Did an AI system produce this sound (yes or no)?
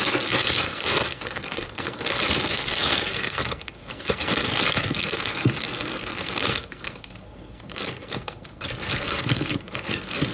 yes